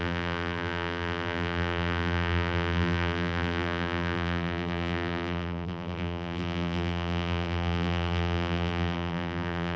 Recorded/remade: remade